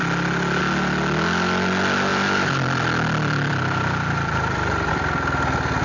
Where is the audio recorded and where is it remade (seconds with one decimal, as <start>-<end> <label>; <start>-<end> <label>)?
0.0-2.1 recorded; 2.1-4.9 remade; 4.9-5.8 recorded